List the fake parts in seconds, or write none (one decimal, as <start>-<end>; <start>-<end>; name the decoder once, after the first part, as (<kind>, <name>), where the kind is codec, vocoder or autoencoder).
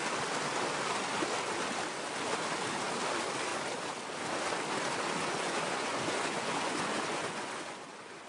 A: 5.2-8.3 (vocoder, Vocos)